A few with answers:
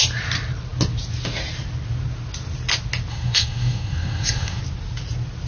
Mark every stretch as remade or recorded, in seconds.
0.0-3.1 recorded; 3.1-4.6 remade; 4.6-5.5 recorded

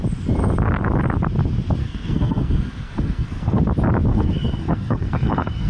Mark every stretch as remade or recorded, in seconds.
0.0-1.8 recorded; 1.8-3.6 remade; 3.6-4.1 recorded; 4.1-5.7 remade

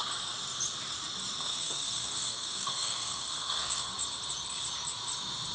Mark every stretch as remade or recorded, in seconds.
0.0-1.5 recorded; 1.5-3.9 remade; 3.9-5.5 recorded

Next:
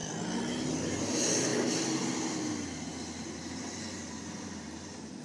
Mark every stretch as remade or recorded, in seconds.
0.0-5.2 recorded

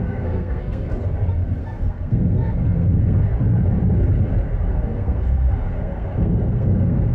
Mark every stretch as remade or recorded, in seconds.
0.0-0.9 remade; 0.9-1.6 recorded; 1.6-3.3 remade; 3.3-4.7 recorded; 4.7-7.1 remade

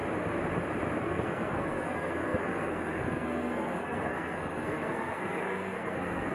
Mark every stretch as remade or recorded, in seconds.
0.0-1.0 recorded; 1.0-6.3 remade

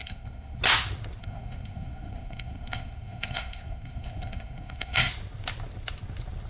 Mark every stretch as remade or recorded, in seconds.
0.0-0.6 remade; 0.6-1.2 recorded; 1.2-5.1 remade; 5.1-6.5 recorded